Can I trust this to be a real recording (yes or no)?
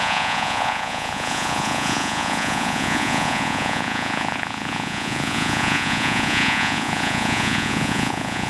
no